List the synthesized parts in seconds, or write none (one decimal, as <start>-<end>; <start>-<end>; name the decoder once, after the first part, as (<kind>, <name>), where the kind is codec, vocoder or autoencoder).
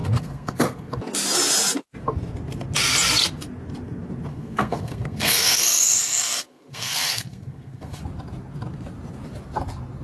0.0-1.0 (codec, SNAC); 4.3-8.0